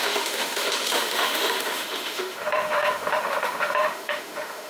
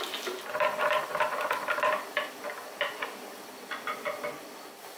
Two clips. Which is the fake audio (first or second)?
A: first